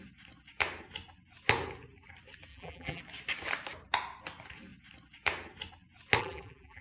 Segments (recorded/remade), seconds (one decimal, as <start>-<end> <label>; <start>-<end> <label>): 0.0-2.5 recorded; 2.5-3.0 remade; 3.0-6.2 recorded; 6.2-6.8 remade